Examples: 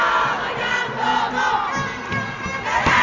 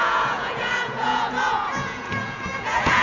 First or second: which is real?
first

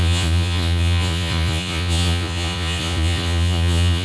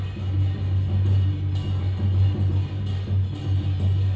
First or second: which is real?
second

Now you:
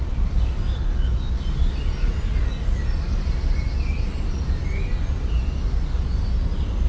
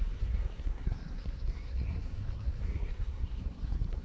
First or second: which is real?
first